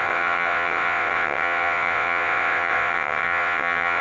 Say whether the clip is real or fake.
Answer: fake